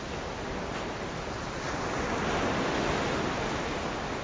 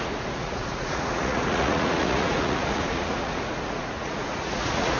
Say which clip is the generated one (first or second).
second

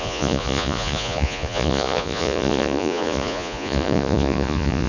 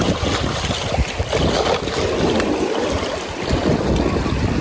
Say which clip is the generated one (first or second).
first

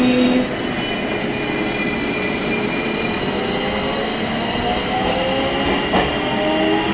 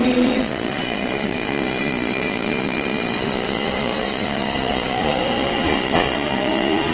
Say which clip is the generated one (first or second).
second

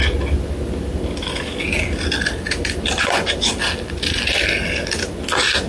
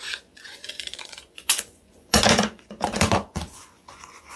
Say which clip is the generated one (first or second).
second